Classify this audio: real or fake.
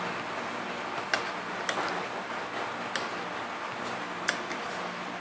real